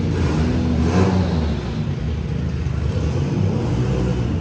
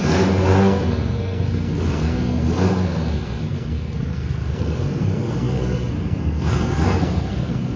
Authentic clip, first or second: first